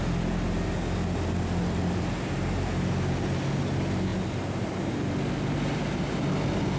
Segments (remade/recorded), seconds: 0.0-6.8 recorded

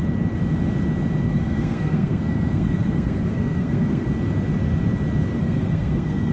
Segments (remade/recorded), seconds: 0.0-1.3 recorded; 1.3-4.1 remade; 4.1-5.4 recorded; 5.4-6.3 remade

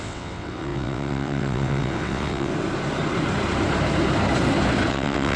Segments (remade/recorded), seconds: 0.0-2.5 remade; 2.5-4.9 recorded; 4.9-5.4 remade

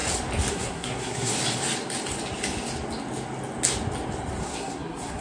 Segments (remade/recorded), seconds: 0.0-0.5 recorded; 0.5-1.3 remade; 1.3-4.4 recorded; 4.4-5.2 remade

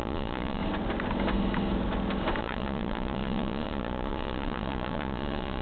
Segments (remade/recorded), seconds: 0.0-0.6 remade; 0.6-2.4 recorded; 2.4-5.6 remade

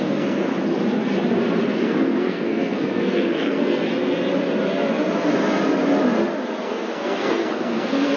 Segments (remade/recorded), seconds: 0.0-0.5 remade; 0.5-1.6 recorded; 1.6-3.9 remade; 3.9-6.6 recorded; 6.6-8.2 remade

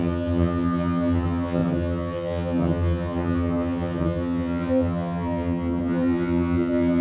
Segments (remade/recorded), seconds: 0.0-7.0 remade

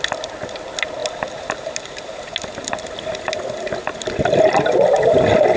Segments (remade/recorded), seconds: 0.0-5.6 recorded